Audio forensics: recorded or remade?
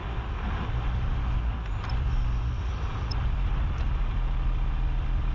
recorded